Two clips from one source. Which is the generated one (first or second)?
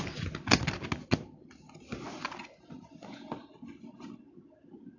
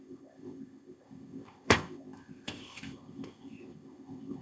second